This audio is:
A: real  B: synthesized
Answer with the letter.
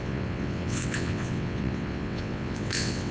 B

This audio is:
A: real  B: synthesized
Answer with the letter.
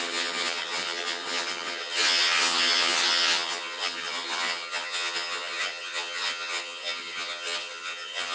B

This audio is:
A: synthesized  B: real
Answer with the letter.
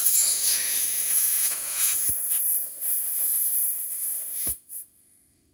A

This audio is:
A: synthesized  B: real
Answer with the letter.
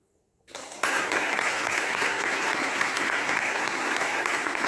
A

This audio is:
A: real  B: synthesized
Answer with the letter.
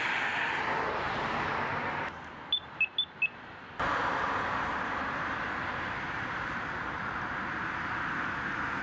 A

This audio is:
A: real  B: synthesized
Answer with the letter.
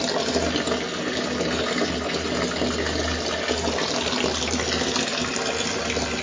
A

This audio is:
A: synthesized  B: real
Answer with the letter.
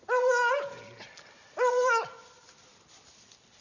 B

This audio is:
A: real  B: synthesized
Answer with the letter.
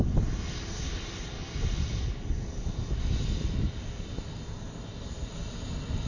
A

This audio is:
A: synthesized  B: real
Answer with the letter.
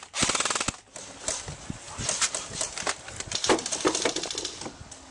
B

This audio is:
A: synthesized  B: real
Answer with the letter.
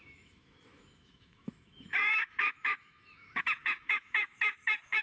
A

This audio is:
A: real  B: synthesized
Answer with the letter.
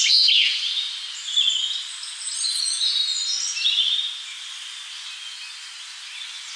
A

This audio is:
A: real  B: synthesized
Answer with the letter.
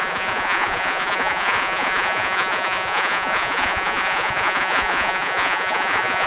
B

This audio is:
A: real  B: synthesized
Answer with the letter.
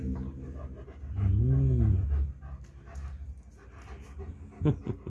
A